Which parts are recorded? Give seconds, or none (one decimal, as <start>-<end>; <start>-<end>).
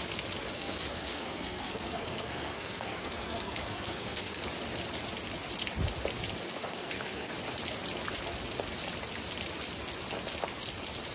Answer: 0.0-0.4; 4.4-6.6; 7.3-11.1